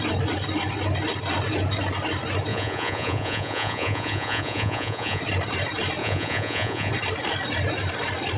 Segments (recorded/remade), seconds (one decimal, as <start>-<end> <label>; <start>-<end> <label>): 0.0-2.5 recorded; 2.5-5.2 remade; 5.2-6.0 recorded; 6.0-6.9 remade; 6.9-8.4 recorded